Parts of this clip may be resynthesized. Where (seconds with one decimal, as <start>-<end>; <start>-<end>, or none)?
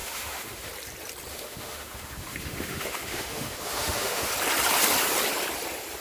0.0-0.7; 1.3-4.3